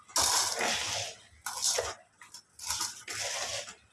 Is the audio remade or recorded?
recorded